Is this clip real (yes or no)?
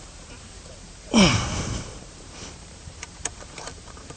no